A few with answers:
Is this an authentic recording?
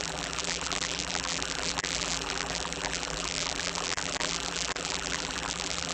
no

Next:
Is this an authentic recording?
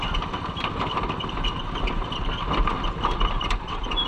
yes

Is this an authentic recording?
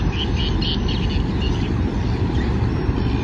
yes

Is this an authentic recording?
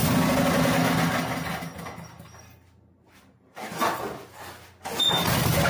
yes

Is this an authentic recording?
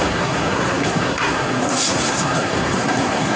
no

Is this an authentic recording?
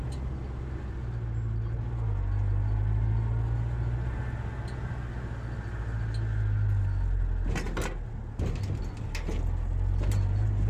yes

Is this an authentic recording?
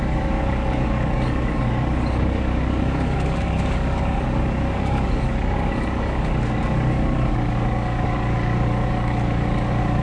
no